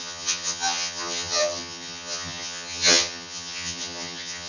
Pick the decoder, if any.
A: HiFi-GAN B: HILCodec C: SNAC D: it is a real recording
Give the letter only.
A